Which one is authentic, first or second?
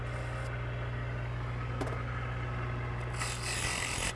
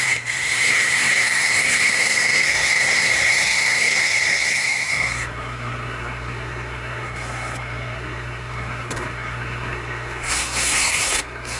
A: first